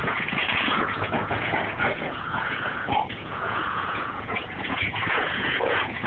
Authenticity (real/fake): fake